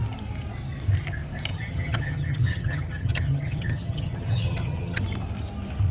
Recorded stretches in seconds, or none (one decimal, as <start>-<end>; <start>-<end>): 0.0-1.5; 5.0-5.9

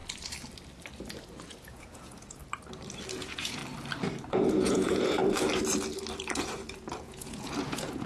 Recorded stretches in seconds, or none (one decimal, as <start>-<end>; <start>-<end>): 0.0-1.4; 2.4-3.2; 3.6-4.3; 5.2-7.0